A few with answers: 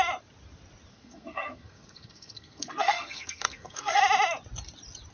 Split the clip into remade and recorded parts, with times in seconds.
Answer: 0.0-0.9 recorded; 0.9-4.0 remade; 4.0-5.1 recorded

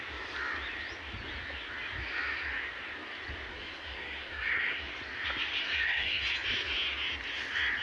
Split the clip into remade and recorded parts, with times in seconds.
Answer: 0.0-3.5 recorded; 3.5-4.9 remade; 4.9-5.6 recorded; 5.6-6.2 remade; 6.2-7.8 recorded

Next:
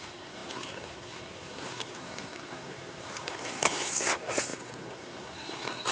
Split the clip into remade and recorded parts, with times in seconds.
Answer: 0.0-5.9 remade